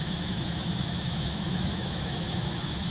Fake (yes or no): yes